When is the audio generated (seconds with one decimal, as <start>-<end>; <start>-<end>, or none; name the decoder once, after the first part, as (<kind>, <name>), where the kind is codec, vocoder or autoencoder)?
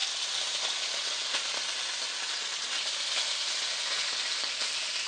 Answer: none